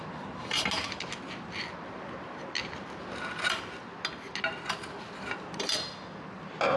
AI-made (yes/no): no